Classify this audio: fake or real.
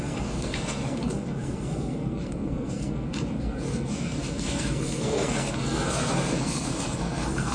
fake